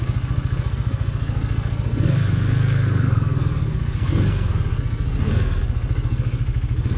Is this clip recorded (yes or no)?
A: no